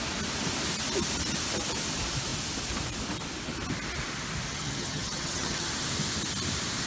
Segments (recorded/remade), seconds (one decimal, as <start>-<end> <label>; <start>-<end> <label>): 0.0-4.5 recorded; 4.5-5.7 remade; 5.7-6.9 recorded